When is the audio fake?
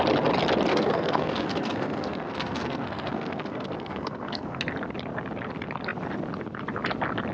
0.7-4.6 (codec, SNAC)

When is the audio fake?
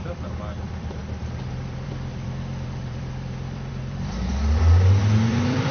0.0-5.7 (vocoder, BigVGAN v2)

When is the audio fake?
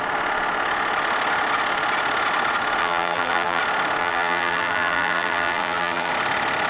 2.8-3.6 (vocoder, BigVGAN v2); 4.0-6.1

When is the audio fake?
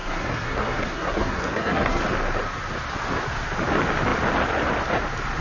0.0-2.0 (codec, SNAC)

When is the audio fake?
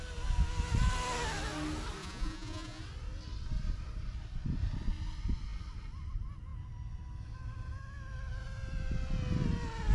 2.0-2.8 (vocoder, Vocos)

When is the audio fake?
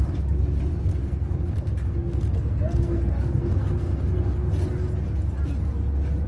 0.7-4.5 (codec, SNAC)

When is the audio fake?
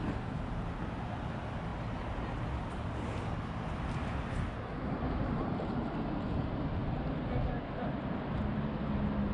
4.7-5.5 (vocoder, BigVGAN v2)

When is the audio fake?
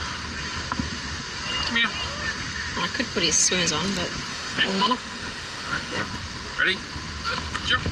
4.3-6.0 (autoencoder, DAC-VAE)